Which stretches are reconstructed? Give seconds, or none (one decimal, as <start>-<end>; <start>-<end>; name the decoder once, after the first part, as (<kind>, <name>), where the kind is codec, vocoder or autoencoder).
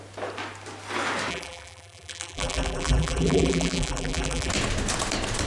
1.3-4.5 (vocoder, BigVGAN v2)